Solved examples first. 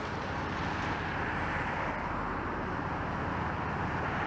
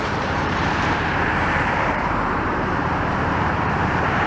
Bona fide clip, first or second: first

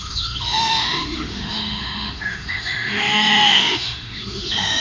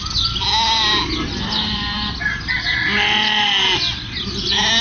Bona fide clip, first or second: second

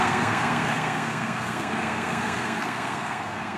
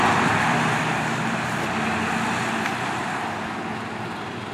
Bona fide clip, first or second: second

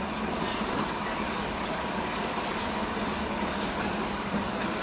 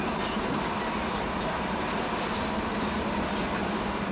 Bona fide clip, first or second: second